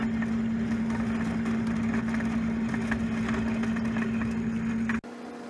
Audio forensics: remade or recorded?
recorded